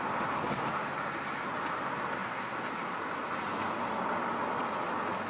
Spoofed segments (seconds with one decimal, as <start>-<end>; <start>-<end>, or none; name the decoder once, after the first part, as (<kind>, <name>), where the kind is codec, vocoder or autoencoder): none